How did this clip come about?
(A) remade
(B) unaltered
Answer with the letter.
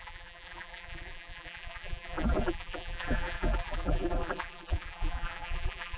A